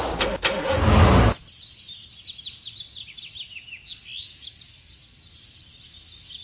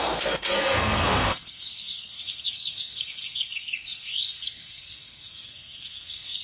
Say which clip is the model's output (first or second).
second